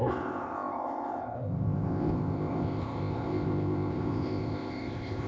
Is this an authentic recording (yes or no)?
no